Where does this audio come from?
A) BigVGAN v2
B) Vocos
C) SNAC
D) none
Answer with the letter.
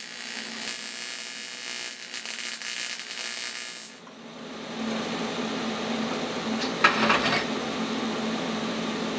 D